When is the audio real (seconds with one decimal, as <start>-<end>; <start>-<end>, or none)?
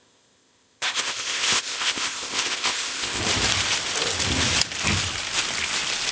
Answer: 3.2-6.1